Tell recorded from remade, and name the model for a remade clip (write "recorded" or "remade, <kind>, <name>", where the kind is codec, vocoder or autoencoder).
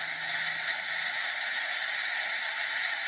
recorded